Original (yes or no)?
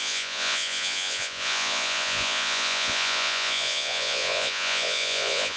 no